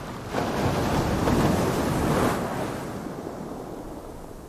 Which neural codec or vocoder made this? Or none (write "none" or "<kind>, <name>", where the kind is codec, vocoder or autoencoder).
none